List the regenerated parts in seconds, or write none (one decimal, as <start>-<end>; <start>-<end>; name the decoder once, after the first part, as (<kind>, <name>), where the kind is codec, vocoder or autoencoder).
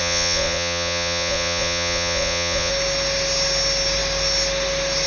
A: 0.0-2.7 (vocoder, Vocos)